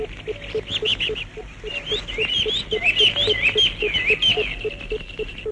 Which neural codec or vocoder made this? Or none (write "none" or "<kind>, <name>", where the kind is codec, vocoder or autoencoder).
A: none